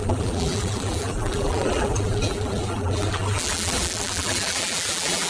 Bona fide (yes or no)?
no